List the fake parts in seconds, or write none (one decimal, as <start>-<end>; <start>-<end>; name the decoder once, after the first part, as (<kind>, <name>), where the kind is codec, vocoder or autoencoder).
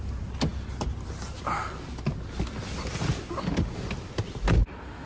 none